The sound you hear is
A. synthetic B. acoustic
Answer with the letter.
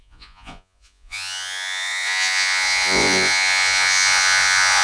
A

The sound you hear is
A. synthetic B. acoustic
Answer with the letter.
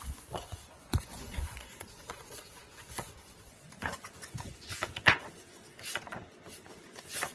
A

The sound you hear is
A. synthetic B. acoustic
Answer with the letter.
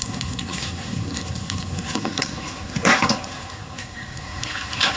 A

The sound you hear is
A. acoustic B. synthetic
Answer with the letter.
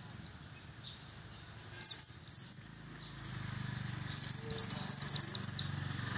A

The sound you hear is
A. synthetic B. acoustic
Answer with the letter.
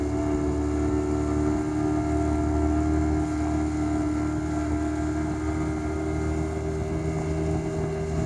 B